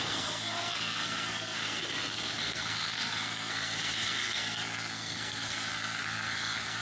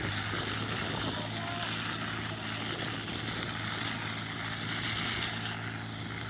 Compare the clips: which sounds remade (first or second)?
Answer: first